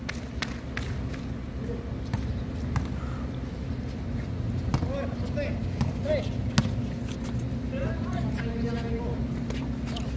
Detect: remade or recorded recorded